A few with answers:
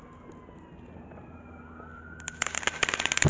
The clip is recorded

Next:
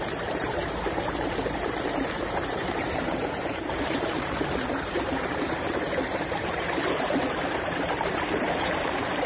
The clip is remade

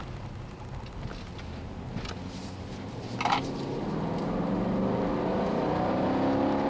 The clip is recorded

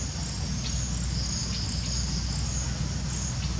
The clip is recorded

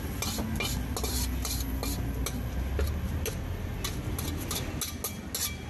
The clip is recorded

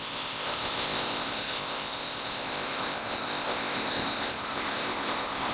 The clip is remade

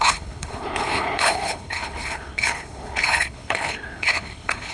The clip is remade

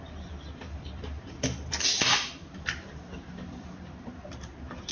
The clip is remade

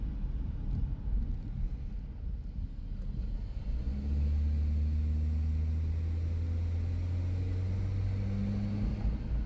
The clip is recorded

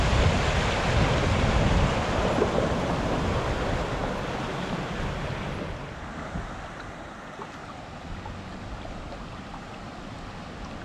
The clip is recorded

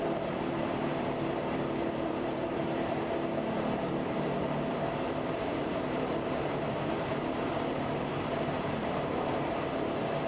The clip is remade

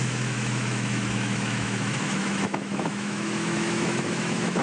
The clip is remade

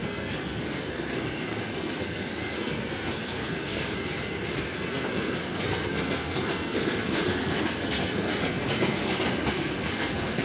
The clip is remade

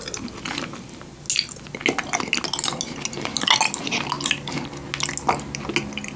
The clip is recorded